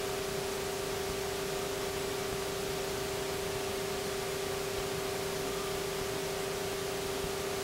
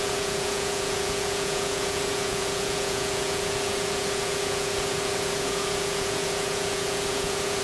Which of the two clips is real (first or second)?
first